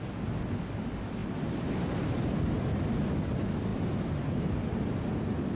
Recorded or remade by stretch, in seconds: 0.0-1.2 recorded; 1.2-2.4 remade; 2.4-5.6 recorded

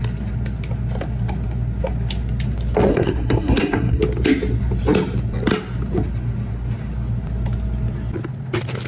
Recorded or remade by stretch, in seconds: 0.0-2.9 recorded; 2.9-4.0 remade; 4.0-8.9 recorded